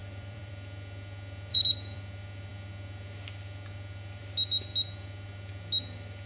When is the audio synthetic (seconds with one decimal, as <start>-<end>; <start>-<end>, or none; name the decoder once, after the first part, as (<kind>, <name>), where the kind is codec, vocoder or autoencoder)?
0.0-0.5 (vocoder, BigVGAN v2); 1.5-2.0